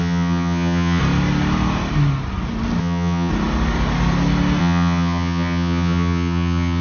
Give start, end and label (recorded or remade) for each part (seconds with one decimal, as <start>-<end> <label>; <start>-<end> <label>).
0.0-1.0 remade; 1.0-2.8 recorded; 2.8-3.3 remade; 3.3-4.6 recorded; 4.6-6.8 remade